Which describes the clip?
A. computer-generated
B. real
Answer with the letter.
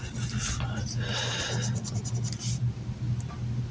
B